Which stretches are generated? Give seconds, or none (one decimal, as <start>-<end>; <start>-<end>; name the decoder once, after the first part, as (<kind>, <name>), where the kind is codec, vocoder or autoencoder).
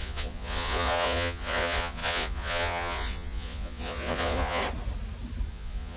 0.0-4.6 (vocoder, Vocos); 5.5-6.0